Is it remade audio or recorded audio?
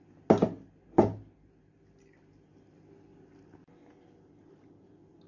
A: recorded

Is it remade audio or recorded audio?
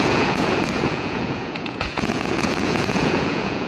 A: remade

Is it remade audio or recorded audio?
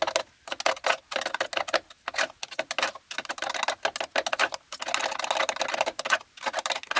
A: recorded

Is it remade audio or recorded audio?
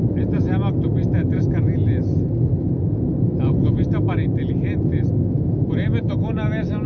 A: recorded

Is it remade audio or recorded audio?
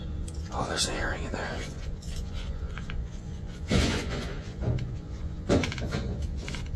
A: remade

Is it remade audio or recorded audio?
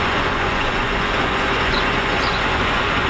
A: remade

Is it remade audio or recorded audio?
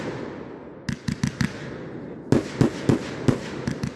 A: recorded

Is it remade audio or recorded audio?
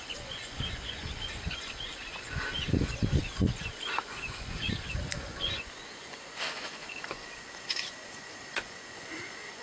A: remade